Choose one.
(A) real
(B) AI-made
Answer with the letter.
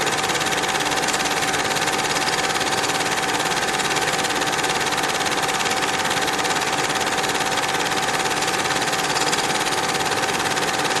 A